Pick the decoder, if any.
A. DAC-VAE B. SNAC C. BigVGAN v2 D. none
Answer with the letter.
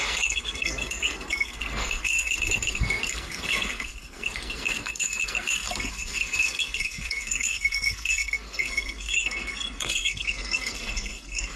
B